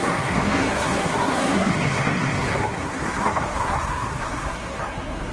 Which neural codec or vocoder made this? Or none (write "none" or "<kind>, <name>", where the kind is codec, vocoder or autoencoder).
codec, SNAC